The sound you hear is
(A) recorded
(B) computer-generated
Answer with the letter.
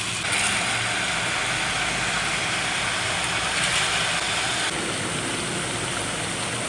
A